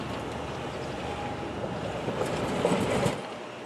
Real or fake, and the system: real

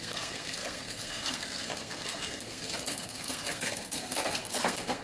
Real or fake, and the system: fake, codec, SNAC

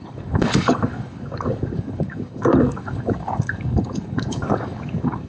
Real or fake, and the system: fake, codec, DAC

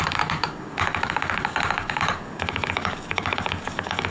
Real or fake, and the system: fake, codec, DAC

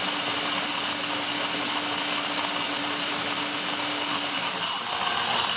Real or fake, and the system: real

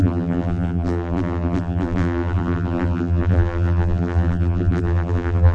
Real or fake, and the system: fake, vocoder, BigVGAN v2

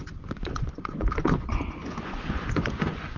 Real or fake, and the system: fake, vocoder, Vocos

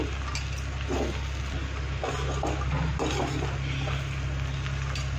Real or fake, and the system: real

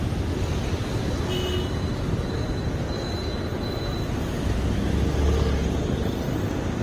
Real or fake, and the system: real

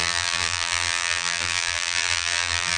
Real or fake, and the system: fake, vocoder, BigVGAN v2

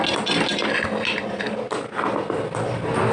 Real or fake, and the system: real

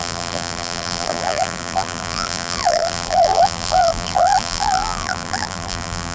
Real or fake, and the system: fake, vocoder, BigVGAN v2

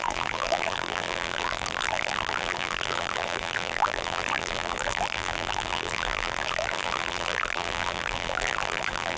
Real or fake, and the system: fake, vocoder, BigVGAN v2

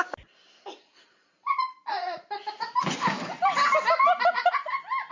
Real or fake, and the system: real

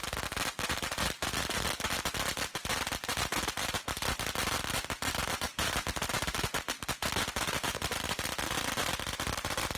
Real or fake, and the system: real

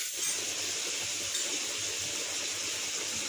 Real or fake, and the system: real